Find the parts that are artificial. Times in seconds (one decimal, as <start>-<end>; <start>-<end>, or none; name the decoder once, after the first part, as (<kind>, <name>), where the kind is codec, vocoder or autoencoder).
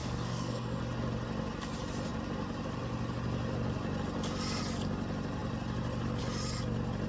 0.0-0.8 (codec, SNAC)